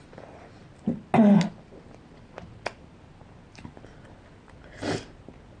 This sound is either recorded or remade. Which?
recorded